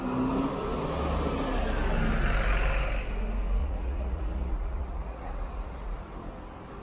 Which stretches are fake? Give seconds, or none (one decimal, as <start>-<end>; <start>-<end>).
3.6-6.0